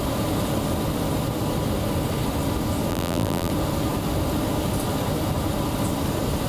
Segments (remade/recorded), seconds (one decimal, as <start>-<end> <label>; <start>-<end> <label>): 0.0-2.9 recorded; 2.9-3.5 remade; 3.5-6.5 recorded